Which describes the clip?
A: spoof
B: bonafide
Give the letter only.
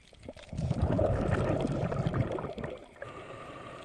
B